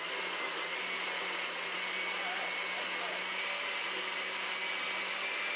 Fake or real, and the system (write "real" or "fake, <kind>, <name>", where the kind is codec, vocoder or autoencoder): real